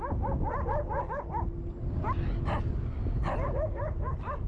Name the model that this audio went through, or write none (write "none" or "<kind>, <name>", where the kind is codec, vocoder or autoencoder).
none